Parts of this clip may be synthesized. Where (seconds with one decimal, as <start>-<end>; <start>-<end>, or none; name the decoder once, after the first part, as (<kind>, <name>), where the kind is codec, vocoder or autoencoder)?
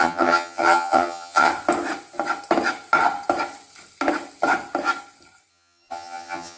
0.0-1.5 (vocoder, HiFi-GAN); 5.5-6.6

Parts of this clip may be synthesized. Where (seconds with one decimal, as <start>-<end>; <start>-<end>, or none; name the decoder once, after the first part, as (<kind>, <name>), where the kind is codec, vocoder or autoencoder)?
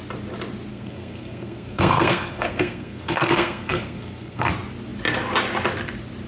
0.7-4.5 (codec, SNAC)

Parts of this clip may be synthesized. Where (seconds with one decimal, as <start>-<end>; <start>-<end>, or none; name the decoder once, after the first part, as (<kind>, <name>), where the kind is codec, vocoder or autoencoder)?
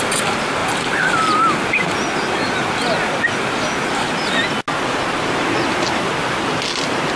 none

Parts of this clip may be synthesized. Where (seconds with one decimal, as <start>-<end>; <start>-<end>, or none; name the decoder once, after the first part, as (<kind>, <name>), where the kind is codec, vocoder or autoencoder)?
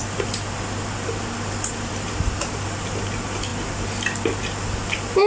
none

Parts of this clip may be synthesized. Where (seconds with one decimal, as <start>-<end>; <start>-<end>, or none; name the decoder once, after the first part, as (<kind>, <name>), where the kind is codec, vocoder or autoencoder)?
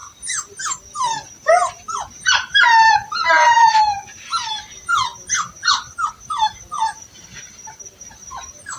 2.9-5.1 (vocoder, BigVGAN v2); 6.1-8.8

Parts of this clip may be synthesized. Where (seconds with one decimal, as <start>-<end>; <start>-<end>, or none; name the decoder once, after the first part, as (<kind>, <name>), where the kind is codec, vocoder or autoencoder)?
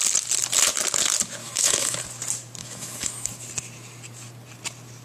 1.4-2.0 (autoencoder, DAC-VAE); 2.6-3.3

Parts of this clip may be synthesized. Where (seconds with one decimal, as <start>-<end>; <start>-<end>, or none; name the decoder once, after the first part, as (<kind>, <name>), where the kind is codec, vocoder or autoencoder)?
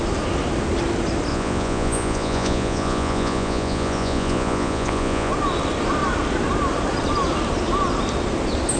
1.3-5.3 (vocoder, Vocos)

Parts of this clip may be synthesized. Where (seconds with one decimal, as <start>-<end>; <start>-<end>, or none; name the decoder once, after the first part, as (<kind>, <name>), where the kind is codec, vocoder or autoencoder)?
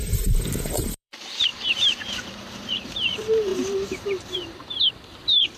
0.0-5.6 (vocoder, BigVGAN v2)